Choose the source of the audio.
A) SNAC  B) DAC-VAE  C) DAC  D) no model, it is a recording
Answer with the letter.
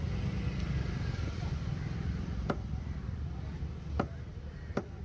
D